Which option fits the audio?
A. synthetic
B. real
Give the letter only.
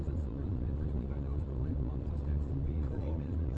A